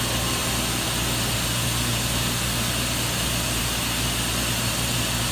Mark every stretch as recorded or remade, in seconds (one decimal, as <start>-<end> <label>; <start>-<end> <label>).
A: 0.0-5.3 recorded